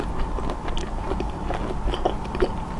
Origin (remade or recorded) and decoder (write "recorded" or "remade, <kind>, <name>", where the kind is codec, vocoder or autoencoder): recorded